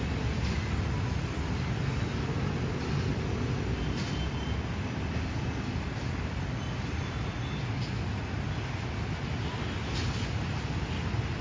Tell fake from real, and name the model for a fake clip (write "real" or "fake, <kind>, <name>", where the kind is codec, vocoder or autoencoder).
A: real